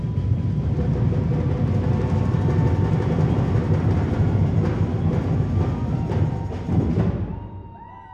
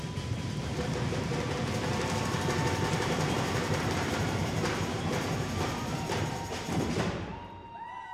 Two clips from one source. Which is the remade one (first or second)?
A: second